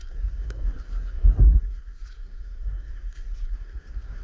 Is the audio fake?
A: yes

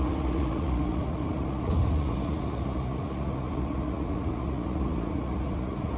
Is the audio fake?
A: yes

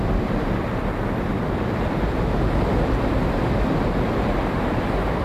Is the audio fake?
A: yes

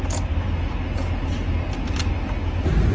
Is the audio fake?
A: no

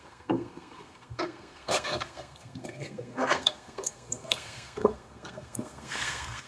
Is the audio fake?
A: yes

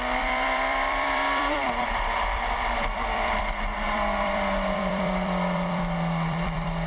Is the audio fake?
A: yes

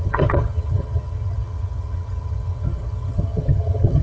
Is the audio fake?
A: yes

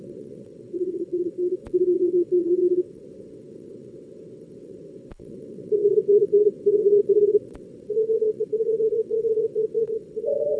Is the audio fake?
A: yes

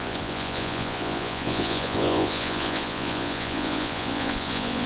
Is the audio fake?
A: yes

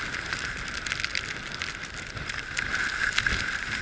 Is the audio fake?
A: no